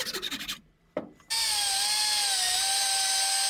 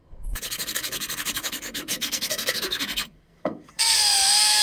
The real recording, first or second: first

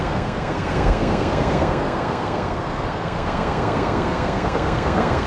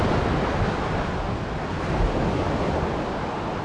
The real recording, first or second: second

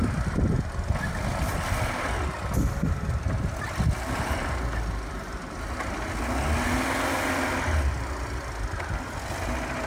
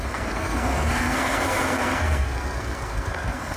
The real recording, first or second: first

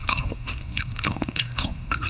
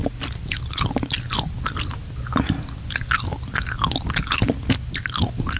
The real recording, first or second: second